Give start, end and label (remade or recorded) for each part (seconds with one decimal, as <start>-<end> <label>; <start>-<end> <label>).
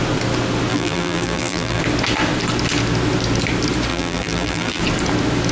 0.0-0.7 recorded; 0.7-1.8 remade; 1.8-3.9 recorded; 3.9-4.8 remade; 4.8-5.5 recorded